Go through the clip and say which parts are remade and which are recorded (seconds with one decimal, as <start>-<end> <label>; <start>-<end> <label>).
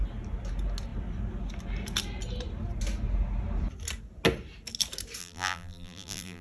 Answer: 0.0-5.2 recorded; 5.2-6.4 remade